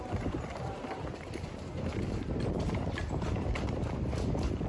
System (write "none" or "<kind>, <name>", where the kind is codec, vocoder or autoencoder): vocoder, BigVGAN v2